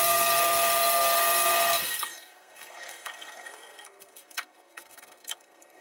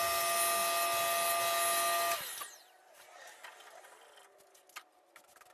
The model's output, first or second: first